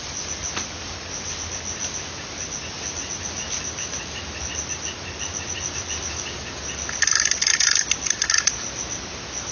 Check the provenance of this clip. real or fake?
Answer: real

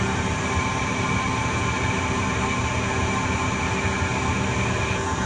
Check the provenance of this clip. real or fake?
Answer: real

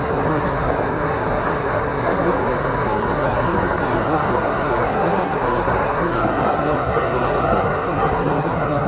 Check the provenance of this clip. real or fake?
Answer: fake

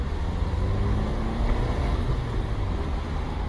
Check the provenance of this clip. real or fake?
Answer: real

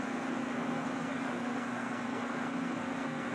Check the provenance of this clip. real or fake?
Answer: fake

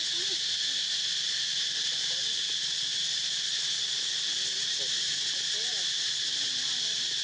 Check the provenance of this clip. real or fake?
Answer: real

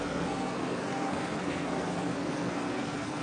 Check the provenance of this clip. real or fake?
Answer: fake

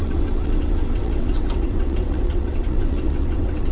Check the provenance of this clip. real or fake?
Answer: fake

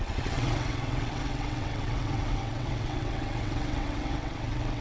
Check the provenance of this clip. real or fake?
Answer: fake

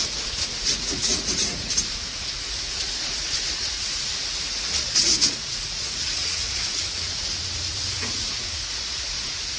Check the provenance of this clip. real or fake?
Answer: fake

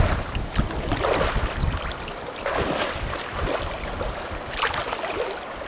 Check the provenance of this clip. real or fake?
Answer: real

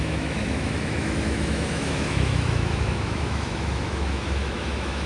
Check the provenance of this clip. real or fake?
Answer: fake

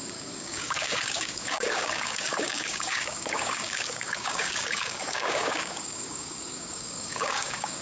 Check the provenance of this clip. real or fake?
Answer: fake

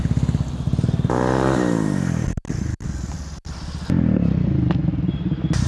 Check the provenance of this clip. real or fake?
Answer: real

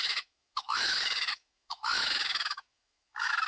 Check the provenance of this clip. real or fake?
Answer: fake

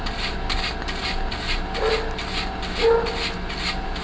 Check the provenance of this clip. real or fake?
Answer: real